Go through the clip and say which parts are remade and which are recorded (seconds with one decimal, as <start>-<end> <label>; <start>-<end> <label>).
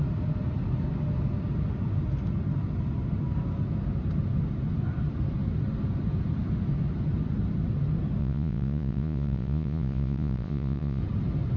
0.0-8.2 recorded; 8.2-11.0 remade; 11.0-11.6 recorded